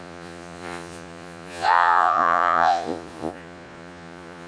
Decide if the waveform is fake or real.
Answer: fake